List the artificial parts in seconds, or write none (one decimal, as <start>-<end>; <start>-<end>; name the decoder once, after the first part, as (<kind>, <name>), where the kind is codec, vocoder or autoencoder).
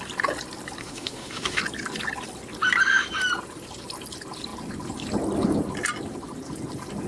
0.8-1.6 (autoencoder, DAC-VAE)